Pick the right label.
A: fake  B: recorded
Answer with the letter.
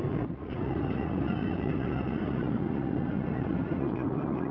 A